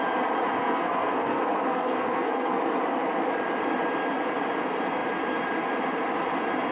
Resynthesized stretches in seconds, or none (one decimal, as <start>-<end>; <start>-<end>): 0.6-2.6